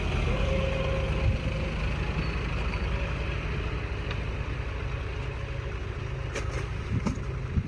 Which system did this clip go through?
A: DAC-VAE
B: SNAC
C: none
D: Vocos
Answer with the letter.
C